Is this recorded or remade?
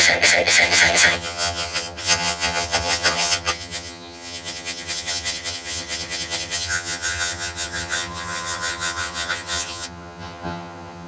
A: remade